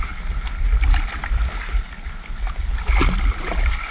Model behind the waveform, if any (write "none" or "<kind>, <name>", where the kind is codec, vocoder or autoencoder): none